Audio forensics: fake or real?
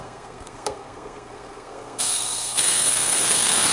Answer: fake